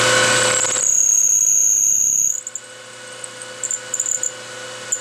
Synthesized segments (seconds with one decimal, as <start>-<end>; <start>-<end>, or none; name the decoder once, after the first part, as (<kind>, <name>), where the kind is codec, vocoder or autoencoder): none